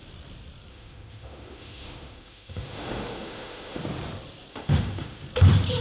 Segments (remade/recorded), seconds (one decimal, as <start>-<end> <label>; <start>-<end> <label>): 0.0-0.7 recorded; 0.7-3.8 remade; 3.8-4.5 recorded; 4.5-5.2 remade; 5.2-5.8 recorded